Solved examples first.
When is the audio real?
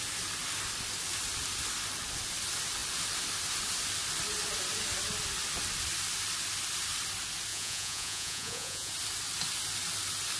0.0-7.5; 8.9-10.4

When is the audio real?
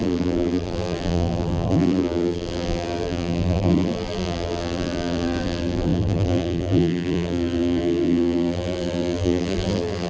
none